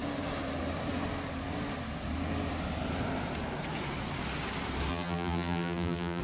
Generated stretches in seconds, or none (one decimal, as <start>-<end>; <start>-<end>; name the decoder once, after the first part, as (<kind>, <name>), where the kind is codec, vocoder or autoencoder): 4.9-6.2 (vocoder, BigVGAN v2)